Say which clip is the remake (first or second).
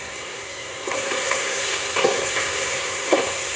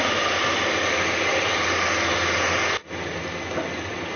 first